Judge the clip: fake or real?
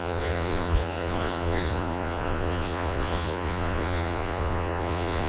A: fake